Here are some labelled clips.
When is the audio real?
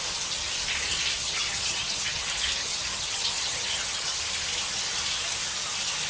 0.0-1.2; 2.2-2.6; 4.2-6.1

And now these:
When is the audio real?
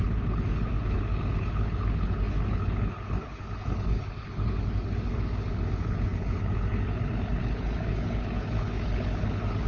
none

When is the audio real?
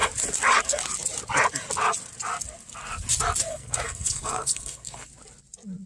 0.0-3.5; 5.1-5.9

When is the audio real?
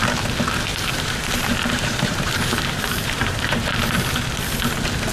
0.0-0.7; 3.7-5.1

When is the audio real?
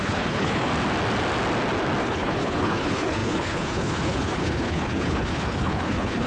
0.7-2.0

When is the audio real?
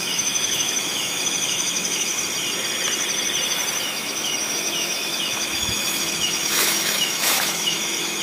2.1-3.8